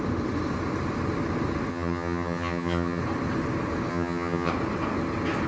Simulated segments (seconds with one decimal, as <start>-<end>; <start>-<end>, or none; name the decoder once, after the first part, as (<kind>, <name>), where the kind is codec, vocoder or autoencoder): 1.7-3.0 (vocoder, HiFi-GAN); 3.9-4.5